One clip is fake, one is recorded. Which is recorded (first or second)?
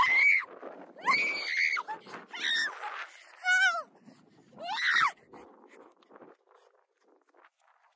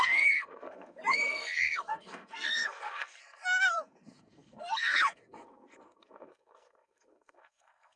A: first